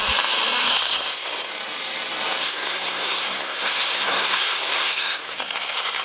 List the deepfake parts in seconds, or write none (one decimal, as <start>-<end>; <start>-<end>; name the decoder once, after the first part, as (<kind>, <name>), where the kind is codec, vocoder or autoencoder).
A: 0.6-1.5 (codec, SNAC); 2.4-6.0